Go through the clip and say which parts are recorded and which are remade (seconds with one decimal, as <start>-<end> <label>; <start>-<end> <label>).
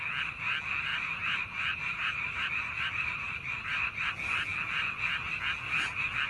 0.0-0.9 recorded; 0.9-4.1 remade; 4.1-6.3 recorded